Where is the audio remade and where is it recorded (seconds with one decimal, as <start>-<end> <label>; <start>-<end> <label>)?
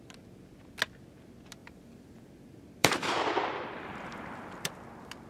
0.0-1.6 recorded; 1.6-2.3 remade; 2.3-2.8 recorded; 2.8-4.7 remade; 4.7-5.3 recorded